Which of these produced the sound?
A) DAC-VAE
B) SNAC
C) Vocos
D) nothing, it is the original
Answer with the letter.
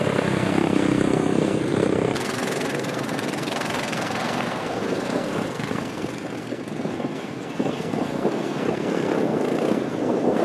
B